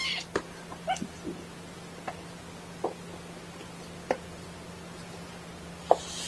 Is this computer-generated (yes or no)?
no